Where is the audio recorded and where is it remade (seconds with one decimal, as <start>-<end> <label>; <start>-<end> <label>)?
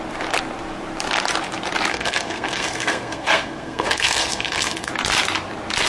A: 0.0-1.9 recorded; 1.9-4.9 remade; 4.9-5.9 recorded